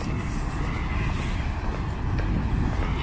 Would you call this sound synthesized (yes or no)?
no